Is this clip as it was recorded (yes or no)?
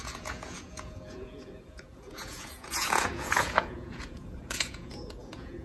no